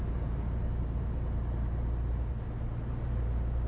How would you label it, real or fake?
real